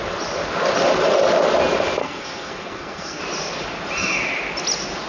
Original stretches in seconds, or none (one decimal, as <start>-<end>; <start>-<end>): 0.0-2.0; 3.2-5.1